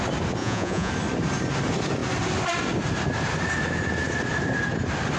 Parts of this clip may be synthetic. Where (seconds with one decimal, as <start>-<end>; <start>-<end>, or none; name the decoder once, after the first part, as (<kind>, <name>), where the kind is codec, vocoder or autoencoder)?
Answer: 0.4-0.9 (vocoder, Vocos)